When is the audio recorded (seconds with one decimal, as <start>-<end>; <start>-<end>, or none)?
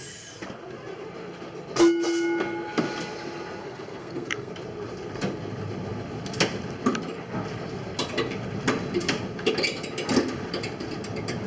0.0-3.6; 4.5-11.5